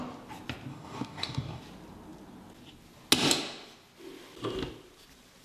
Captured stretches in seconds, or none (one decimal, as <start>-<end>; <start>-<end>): 0.0-0.7; 1.6-5.4